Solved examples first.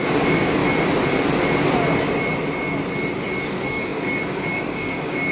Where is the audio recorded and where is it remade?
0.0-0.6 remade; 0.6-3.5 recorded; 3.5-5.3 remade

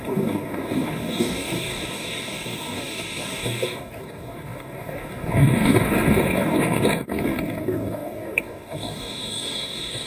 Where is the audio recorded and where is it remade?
0.0-10.1 remade